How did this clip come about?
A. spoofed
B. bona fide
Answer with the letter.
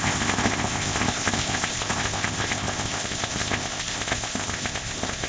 A